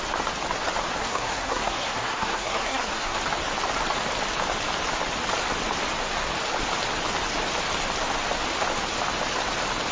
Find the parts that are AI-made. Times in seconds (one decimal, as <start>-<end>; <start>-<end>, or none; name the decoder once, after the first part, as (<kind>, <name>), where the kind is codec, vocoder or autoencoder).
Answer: 1.0-3.2 (codec, SNAC)